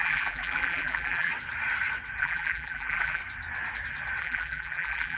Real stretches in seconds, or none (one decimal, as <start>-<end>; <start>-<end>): 1.3-2.2; 3.2-4.2